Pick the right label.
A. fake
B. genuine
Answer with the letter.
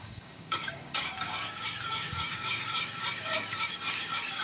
A